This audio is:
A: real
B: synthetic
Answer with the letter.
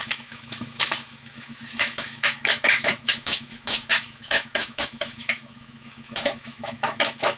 B